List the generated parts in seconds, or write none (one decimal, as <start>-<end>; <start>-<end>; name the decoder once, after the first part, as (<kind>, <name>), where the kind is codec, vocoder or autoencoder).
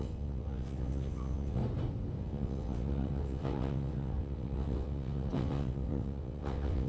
0.0-1.6 (vocoder, WaveNeXt); 2.2-6.9